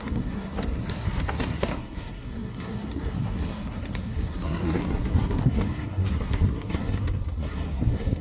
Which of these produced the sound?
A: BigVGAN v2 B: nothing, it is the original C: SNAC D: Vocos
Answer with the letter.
C